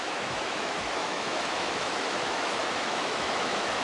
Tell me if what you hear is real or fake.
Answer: fake